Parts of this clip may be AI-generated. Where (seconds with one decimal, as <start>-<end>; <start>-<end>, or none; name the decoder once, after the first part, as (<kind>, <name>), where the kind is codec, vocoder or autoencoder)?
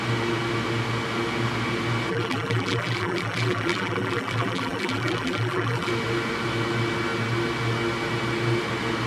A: 2.1-5.9 (vocoder, BigVGAN v2)